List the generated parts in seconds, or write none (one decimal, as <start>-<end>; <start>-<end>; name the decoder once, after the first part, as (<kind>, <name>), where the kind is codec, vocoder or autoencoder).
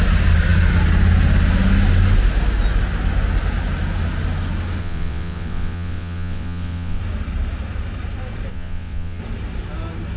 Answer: 4.8-7.0 (vocoder, WaveNeXt); 8.5-9.2